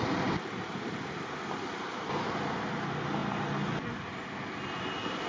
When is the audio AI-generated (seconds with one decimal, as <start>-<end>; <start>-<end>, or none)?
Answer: none